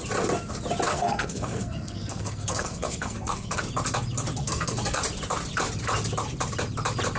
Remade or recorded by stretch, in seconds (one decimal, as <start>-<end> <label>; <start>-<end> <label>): 0.0-0.9 recorded; 0.9-3.6 remade; 3.6-4.4 recorded; 4.4-5.0 remade; 5.0-7.2 recorded